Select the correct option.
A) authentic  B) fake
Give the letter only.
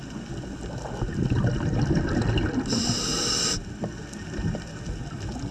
A